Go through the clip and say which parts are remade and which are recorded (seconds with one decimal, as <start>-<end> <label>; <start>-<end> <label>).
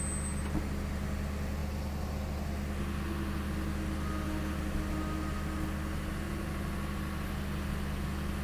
0.0-8.4 recorded